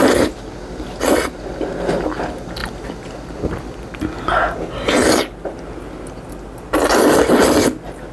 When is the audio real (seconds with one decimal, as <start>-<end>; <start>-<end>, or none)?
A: 0.0-8.1